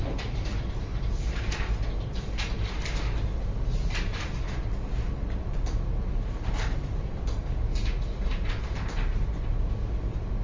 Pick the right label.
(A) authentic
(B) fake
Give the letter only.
A